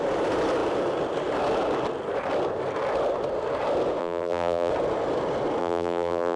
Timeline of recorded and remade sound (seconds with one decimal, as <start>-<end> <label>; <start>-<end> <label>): 0.0-4.0 recorded; 4.0-4.7 remade; 4.7-5.6 recorded; 5.6-6.4 remade